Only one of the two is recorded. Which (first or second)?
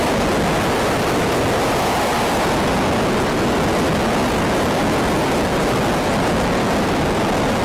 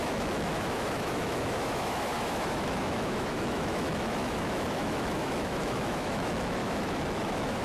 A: first